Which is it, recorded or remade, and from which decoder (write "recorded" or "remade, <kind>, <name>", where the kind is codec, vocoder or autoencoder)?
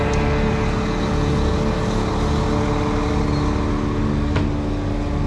recorded